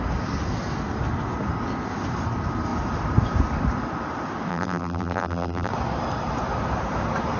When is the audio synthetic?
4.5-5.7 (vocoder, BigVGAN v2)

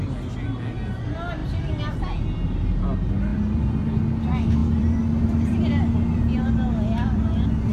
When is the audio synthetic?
1.4-2.0 (vocoder, BigVGAN v2); 3.3-4.0; 4.6-5.6

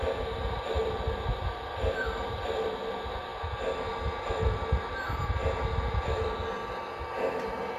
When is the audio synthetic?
none